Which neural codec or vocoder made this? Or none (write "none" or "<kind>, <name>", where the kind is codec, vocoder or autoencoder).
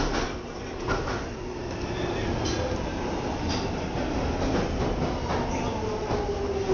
none